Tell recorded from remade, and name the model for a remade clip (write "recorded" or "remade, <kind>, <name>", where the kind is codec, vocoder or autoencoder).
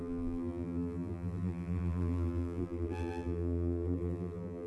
remade, vocoder, BigVGAN v2